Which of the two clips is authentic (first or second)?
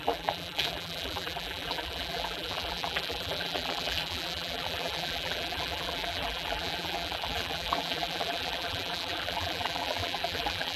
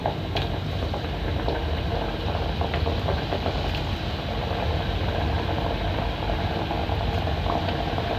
second